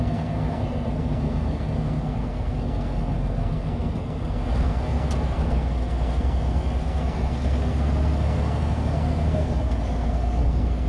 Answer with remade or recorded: remade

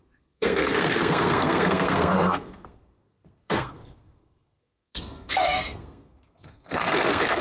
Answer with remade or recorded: remade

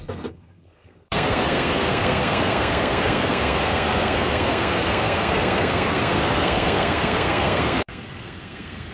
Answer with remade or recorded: remade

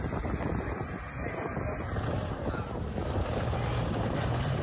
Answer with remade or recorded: recorded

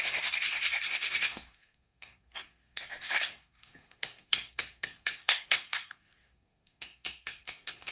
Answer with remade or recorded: remade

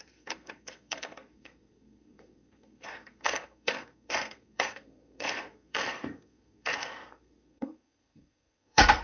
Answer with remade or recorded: remade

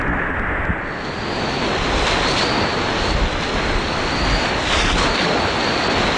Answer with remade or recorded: recorded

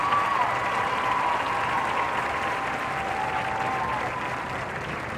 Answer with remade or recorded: recorded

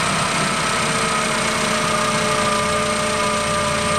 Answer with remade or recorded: recorded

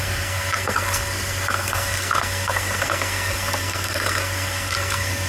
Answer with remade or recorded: remade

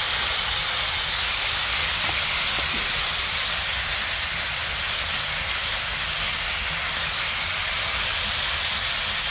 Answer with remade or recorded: recorded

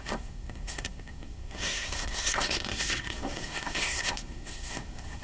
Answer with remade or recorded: remade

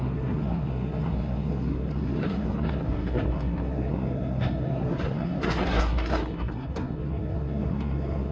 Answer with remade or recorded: remade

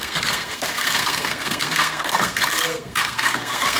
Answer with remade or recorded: remade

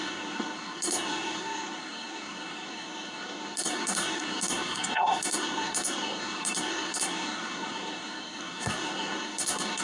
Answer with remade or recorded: remade